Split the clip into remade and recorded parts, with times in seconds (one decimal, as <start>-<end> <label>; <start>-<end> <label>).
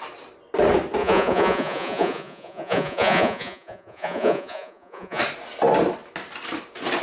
0.0-1.0 recorded; 1.0-5.2 remade; 5.2-7.0 recorded